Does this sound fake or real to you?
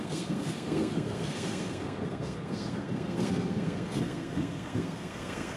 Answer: fake